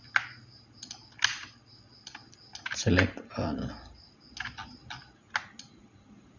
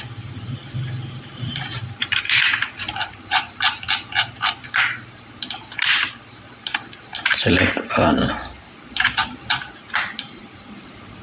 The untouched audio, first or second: first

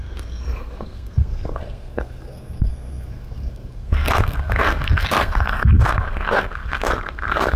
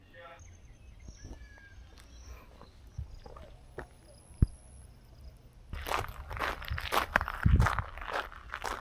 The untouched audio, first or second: second